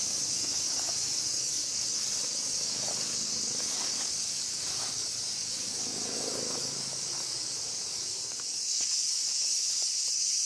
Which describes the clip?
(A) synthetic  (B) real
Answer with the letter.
A